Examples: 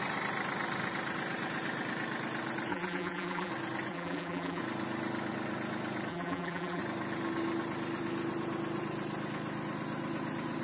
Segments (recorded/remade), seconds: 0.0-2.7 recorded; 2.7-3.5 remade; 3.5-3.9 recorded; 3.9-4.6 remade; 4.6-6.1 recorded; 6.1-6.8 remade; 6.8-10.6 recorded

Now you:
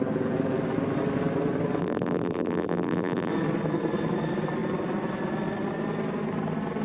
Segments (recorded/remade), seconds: 0.0-1.8 recorded; 1.8-3.3 remade; 3.3-6.8 recorded

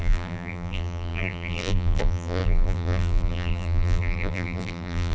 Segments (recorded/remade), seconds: 0.0-5.1 remade

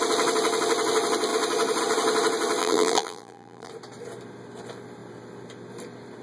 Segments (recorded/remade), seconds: 0.0-2.6 recorded; 2.6-3.7 remade; 3.7-6.2 recorded

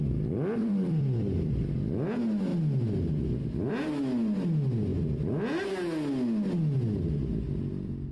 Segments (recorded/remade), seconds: 0.0-0.6 recorded; 0.6-1.5 remade; 1.5-8.1 recorded

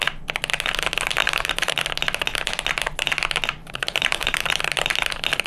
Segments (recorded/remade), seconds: 0.0-1.2 recorded; 1.2-1.8 remade; 1.8-3.6 recorded; 3.6-4.5 remade; 4.5-5.5 recorded

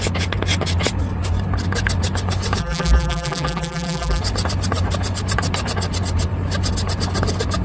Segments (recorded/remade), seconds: 0.0-2.6 recorded; 2.6-4.2 remade; 4.2-7.6 recorded